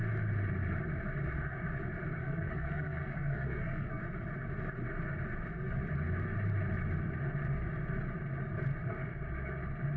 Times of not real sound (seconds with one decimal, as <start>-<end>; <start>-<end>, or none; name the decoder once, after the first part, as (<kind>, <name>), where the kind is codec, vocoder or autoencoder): 2.2-4.0 (codec, SNAC)